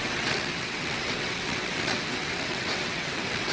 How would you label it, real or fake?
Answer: fake